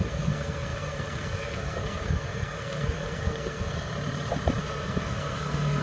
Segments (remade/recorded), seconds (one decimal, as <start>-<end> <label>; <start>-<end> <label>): 0.0-3.9 remade; 3.9-4.6 recorded; 4.6-5.8 remade